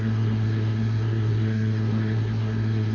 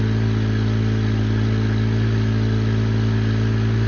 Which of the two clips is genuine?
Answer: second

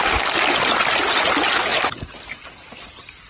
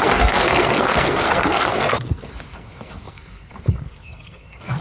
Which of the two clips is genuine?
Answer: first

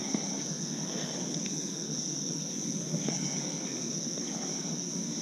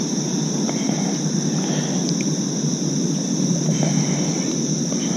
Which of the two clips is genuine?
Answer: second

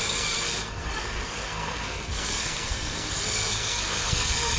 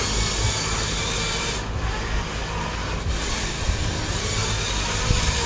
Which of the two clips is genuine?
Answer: second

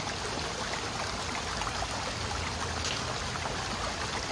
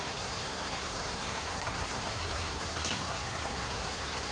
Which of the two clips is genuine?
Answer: first